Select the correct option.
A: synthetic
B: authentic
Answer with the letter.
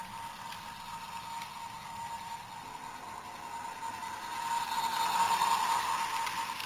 B